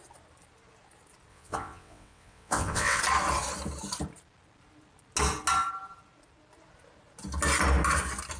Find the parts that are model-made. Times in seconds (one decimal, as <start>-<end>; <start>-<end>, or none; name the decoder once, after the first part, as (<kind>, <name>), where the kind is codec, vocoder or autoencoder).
1.3-3.0 (vocoder, WaveNeXt)